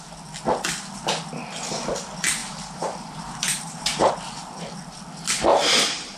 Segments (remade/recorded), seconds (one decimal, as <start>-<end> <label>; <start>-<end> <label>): 0.0-2.4 recorded; 2.4-4.1 remade; 4.1-5.5 recorded; 5.5-6.2 remade